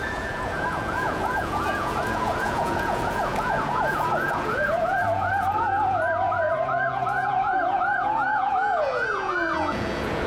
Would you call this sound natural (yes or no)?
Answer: no